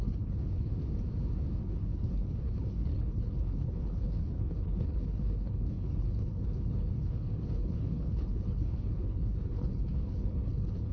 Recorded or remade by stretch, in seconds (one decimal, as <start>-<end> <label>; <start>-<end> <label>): 0.0-0.7 remade; 0.7-1.6 recorded; 1.6-10.9 remade